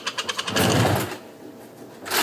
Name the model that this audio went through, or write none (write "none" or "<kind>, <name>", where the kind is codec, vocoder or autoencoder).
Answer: none